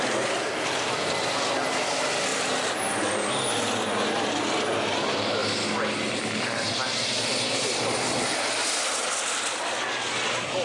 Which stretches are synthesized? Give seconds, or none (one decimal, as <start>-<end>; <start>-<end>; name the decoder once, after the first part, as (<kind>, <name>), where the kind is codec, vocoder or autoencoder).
2.3-3.0 (vocoder, BigVGAN v2)